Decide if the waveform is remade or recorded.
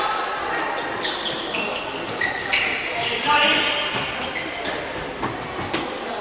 recorded